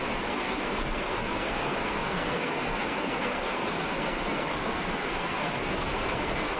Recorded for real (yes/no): no